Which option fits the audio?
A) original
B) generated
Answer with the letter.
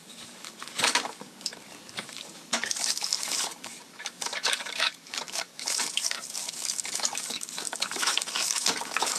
B